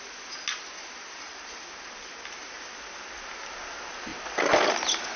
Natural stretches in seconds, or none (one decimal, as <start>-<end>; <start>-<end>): 0.0-5.2